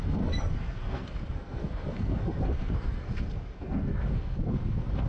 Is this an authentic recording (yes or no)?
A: no